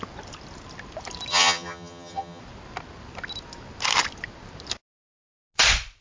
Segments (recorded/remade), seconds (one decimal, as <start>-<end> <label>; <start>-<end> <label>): 0.0-1.3 recorded; 1.3-2.4 remade; 2.4-6.0 recorded